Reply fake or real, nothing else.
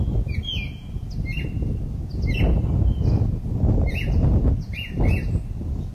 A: real